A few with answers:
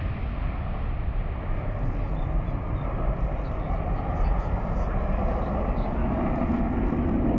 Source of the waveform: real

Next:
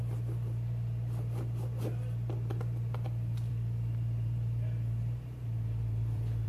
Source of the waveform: fake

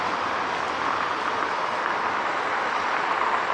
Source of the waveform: real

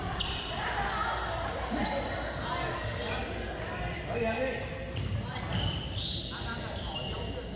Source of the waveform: real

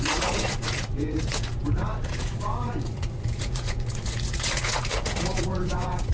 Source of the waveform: fake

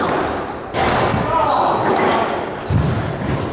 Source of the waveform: real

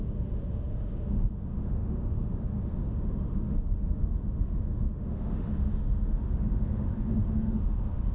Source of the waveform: fake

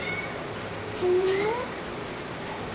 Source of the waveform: fake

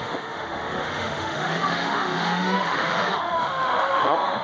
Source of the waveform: fake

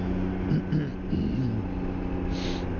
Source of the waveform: real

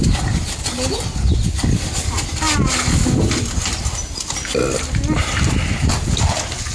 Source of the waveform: real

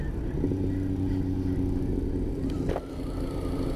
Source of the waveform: real